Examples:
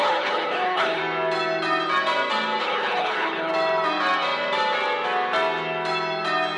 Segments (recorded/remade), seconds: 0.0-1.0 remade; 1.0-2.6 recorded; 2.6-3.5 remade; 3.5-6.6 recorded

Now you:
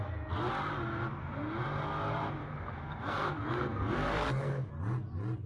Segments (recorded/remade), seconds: 0.0-2.4 recorded; 2.4-4.7 remade; 4.7-5.5 recorded

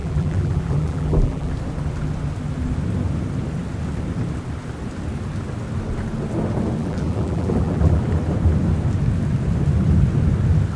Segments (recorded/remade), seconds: 0.0-1.5 remade; 1.5-6.8 recorded; 6.8-8.0 remade; 8.0-10.8 recorded

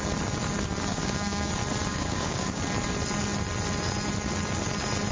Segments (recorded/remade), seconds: 0.0-0.9 recorded; 0.9-1.5 remade; 1.5-1.9 recorded; 1.9-2.6 remade; 2.6-5.1 recorded

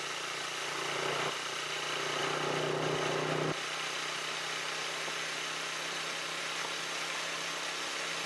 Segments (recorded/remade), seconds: 0.0-8.3 recorded

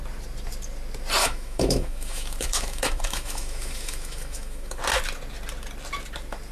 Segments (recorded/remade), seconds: 0.0-1.2 recorded; 1.2-4.8 remade; 4.8-6.5 recorded